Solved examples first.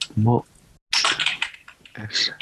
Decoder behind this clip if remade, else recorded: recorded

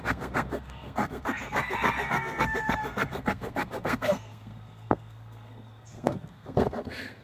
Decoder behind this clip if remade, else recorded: remade, codec, SNAC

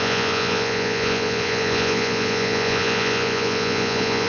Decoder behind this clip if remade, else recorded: remade, vocoder, Vocos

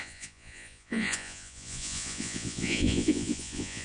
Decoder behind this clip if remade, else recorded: remade, vocoder, Vocos